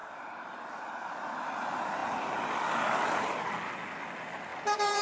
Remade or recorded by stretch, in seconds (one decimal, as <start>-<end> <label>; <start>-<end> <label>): 0.0-1.2 remade; 1.2-2.0 recorded; 2.0-3.2 remade; 3.2-4.5 recorded; 4.5-5.0 remade